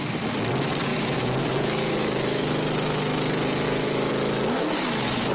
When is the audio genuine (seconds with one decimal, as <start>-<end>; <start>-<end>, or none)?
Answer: 0.0-0.5